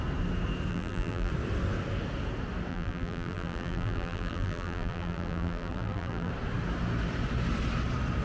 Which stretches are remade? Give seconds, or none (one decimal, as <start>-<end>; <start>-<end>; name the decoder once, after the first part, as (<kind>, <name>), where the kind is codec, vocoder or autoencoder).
0.7-1.3 (vocoder, BigVGAN v2); 2.7-6.3